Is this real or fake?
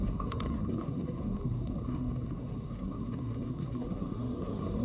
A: fake